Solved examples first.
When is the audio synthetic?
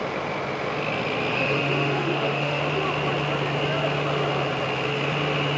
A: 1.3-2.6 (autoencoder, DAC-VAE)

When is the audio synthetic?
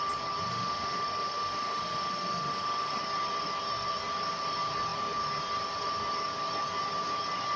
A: 0.5-3.0 (autoencoder, DAC-VAE)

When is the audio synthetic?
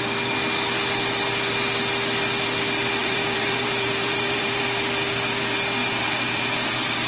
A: 3.0-4.6 (vocoder, BigVGAN v2); 5.8-6.4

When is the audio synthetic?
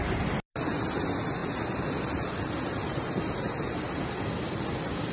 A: none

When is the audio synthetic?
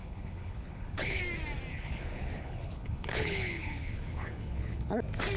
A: 0.0-1.2 (codec, HILCodec); 1.7-4.9